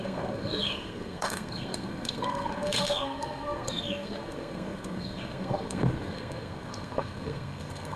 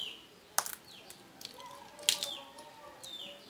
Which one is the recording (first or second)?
second